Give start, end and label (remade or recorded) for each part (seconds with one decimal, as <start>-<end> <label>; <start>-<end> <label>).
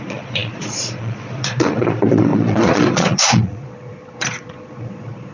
0.0-5.3 remade